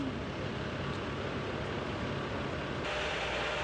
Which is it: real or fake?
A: real